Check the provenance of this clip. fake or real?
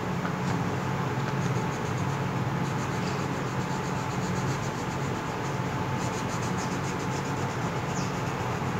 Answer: real